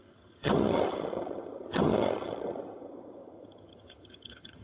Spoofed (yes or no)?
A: yes